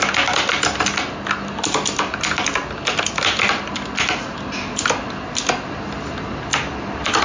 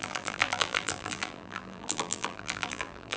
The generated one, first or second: second